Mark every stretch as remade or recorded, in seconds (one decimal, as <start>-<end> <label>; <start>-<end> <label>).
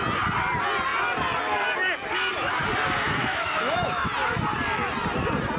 0.0-3.3 recorded; 3.3-4.1 remade; 4.1-5.6 recorded